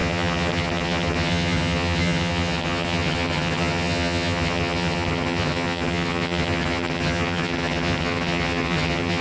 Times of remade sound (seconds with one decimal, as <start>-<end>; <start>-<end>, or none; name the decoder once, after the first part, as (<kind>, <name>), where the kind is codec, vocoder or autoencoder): 0.0-9.2 (vocoder, HiFi-GAN)